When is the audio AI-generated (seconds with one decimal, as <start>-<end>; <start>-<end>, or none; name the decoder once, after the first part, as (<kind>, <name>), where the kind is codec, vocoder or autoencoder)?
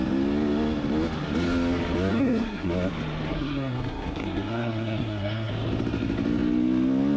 2.1-2.7 (codec, SNAC); 3.3-5.5